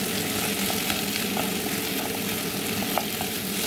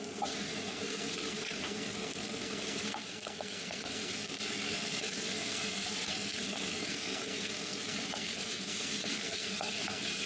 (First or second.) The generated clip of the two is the second